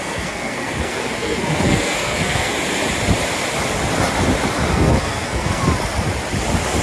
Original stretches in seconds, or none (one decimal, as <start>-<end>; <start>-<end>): 2.5-4.7; 5.6-6.8